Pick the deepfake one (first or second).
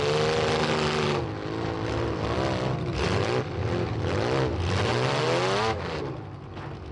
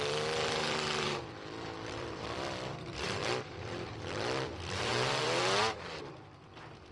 second